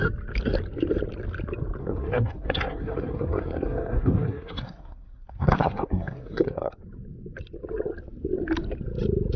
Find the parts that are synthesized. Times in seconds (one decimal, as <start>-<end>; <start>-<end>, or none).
1.8-6.8